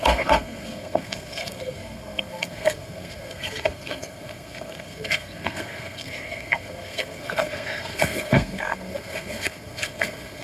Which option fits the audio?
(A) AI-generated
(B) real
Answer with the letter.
A